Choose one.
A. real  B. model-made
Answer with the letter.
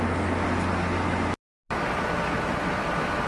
A